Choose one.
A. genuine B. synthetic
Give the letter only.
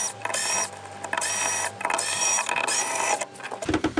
A